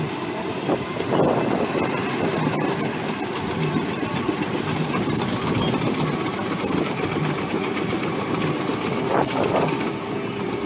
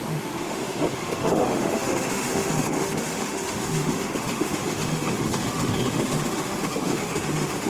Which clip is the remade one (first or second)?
second